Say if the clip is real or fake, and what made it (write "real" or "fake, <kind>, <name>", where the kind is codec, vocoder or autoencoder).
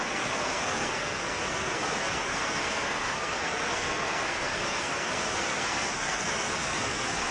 fake, codec, SNAC